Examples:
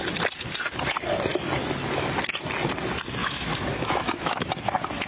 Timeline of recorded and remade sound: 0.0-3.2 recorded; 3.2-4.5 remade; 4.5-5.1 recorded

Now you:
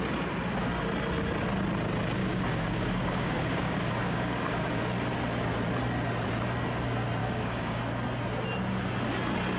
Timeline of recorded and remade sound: 0.0-2.2 recorded; 2.2-4.8 remade; 4.8-7.2 recorded; 7.2-7.8 remade; 7.8-9.6 recorded